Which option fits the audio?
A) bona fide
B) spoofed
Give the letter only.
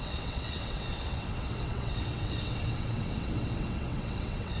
B